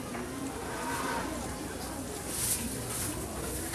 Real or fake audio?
real